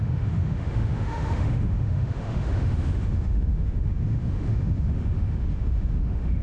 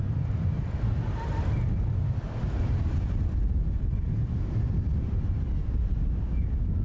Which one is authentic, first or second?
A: second